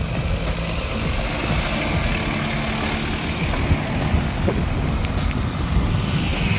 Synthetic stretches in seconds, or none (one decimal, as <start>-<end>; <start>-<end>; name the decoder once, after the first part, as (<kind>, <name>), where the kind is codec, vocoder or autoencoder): none